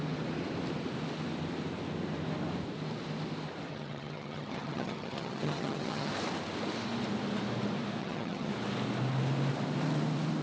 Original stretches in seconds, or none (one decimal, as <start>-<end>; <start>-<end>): 0.0-3.7; 6.1-8.0; 8.5-10.4